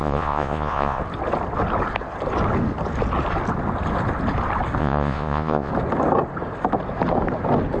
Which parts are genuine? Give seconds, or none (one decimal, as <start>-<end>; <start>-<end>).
1.0-4.8; 5.7-7.8